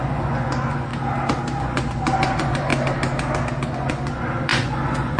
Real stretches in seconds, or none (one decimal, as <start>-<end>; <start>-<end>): 0.9-1.6; 2.7-3.7